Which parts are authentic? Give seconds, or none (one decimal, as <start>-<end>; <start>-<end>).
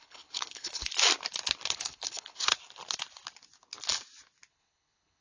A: 0.9-1.7; 2.5-4.5